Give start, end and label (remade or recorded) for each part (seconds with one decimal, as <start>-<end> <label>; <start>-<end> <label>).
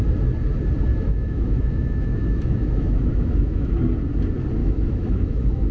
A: 0.0-0.9 recorded; 0.9-3.7 remade; 3.7-4.6 recorded; 4.6-5.7 remade